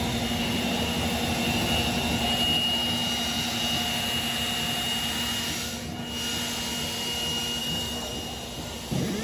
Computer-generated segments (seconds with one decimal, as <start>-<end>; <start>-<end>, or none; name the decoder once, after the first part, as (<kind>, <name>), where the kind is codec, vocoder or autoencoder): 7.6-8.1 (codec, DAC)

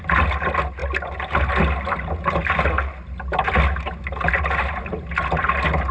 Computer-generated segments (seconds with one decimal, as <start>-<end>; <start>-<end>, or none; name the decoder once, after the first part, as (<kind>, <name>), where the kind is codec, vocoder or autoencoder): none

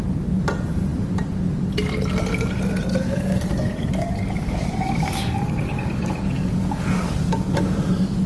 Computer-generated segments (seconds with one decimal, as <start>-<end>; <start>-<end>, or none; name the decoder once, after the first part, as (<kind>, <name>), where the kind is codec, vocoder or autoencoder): 2.9-7.9 (codec, DAC)